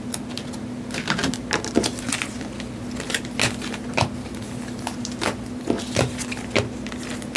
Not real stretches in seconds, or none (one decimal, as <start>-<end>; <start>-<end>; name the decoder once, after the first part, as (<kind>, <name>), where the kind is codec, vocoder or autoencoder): none